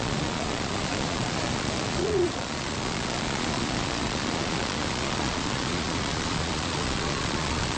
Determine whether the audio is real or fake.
fake